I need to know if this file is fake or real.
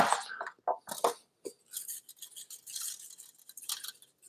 real